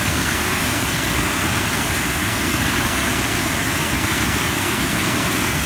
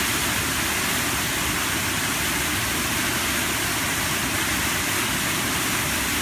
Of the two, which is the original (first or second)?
second